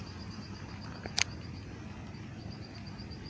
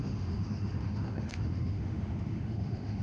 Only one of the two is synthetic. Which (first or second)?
second